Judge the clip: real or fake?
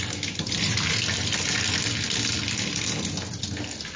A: real